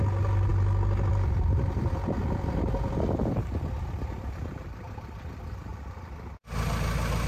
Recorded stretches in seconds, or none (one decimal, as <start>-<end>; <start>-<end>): 0.5-1.1; 5.7-7.3